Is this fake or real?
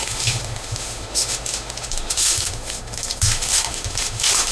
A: fake